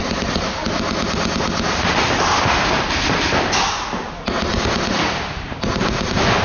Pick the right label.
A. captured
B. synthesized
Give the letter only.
A